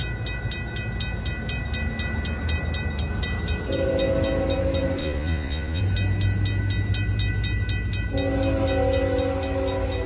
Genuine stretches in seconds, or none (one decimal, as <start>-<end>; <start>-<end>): 0.0-5.0; 5.8-10.1